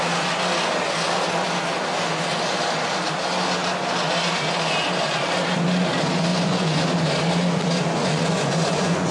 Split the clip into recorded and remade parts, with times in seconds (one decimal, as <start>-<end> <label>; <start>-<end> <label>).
0.0-6.3 recorded; 6.3-6.8 remade; 6.8-8.0 recorded; 8.0-9.1 remade